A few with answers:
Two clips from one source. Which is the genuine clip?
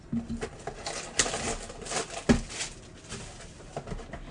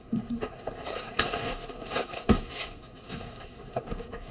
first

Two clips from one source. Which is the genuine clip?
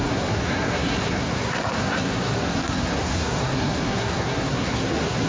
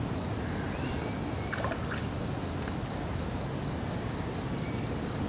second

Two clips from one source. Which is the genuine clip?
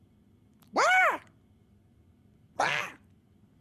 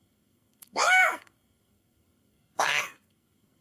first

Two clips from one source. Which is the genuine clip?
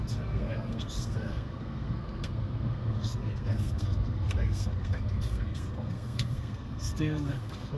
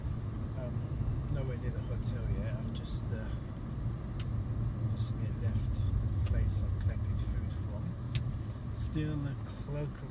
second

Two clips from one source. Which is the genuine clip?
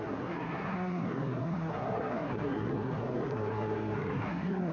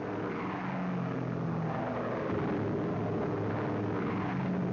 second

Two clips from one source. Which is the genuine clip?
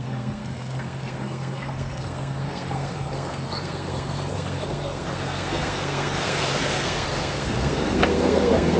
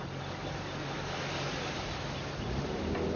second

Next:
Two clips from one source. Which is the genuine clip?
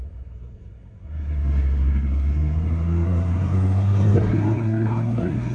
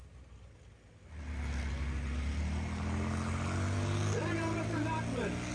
second